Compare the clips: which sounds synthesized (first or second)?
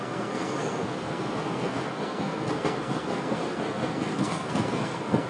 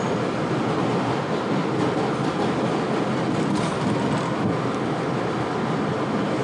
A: first